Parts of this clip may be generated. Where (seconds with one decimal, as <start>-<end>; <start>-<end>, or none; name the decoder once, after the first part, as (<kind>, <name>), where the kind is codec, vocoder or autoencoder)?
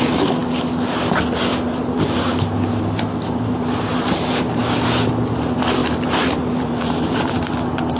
1.5-5.0 (vocoder, BigVGAN v2); 5.8-7.4